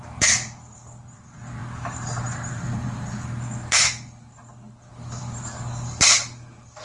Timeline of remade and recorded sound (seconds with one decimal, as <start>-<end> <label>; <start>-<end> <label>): 0.0-6.8 recorded